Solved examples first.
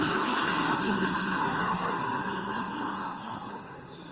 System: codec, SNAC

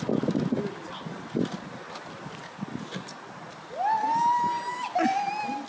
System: none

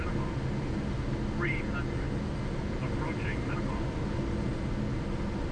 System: none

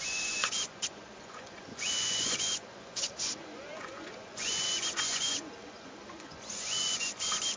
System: vocoder, Vocos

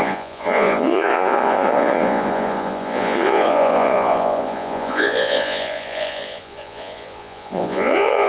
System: vocoder, Vocos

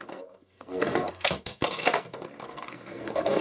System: codec, SNAC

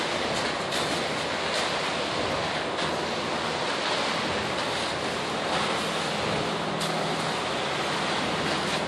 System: none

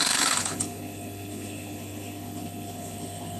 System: codec, HILCodec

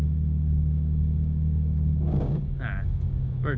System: codec, DAC